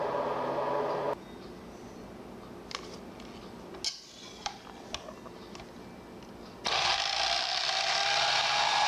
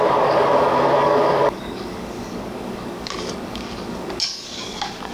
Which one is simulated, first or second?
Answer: second